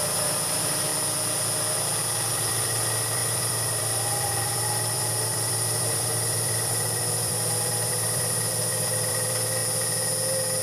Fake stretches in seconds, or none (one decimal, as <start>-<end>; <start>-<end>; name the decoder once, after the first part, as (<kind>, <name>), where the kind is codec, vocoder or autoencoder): 0.0-0.9 (vocoder, BigVGAN v2); 2.3-9.6